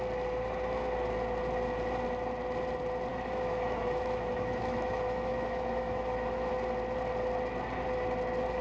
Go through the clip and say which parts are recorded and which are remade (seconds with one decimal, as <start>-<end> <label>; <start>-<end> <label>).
0.0-3.1 recorded; 3.1-6.5 remade; 6.5-8.6 recorded